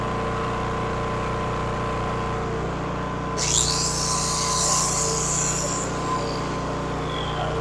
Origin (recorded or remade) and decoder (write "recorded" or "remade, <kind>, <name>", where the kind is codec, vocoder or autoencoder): recorded